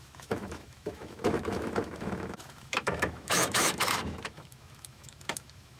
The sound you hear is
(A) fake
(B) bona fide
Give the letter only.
A